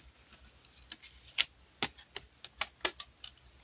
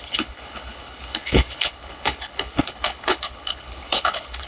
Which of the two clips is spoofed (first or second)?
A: second